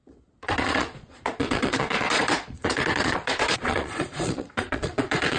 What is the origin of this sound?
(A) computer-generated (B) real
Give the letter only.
A